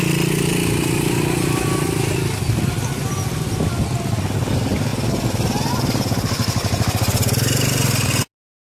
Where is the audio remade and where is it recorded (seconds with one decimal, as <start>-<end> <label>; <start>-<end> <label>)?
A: 0.0-8.7 recorded